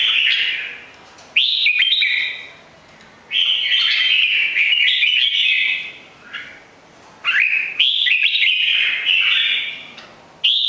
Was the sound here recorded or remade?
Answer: recorded